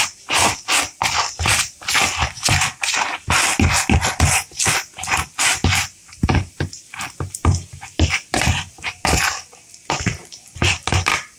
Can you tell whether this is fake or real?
real